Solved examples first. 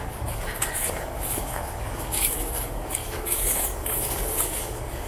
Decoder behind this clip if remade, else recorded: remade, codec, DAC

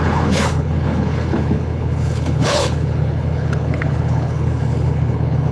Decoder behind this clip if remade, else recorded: remade, codec, HILCodec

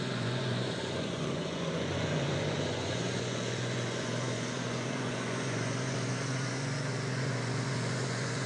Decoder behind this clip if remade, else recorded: remade, vocoder, Vocos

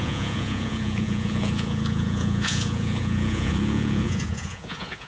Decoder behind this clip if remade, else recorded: remade, vocoder, Vocos